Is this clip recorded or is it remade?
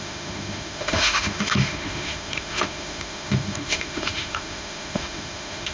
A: remade